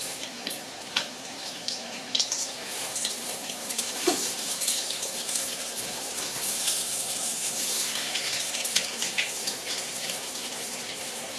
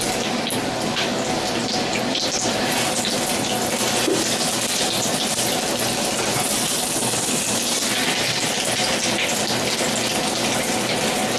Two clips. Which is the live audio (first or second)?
second